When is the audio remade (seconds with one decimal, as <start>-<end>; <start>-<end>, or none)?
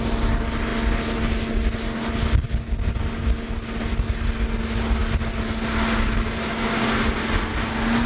none